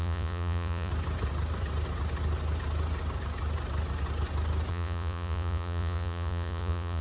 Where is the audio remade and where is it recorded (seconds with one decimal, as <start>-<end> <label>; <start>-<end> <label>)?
0.0-0.9 remade; 0.9-4.7 recorded; 4.7-7.0 remade